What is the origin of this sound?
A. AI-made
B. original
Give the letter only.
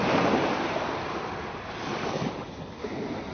B